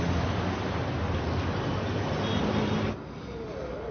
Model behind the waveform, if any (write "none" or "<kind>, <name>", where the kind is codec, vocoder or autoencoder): none